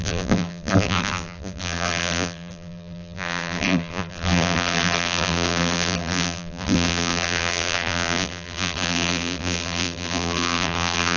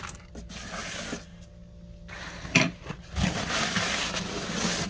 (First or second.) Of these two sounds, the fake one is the first